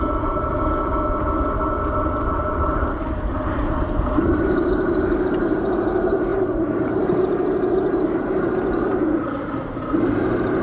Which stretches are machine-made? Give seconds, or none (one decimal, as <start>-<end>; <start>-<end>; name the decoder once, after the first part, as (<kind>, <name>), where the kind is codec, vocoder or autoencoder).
0.0-0.5 (vocoder, BigVGAN v2); 2.2-10.6